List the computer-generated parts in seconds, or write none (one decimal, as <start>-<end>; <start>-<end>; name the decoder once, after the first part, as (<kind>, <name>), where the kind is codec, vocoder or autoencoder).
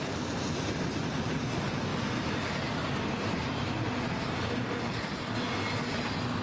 none